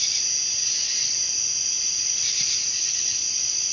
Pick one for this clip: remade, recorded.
recorded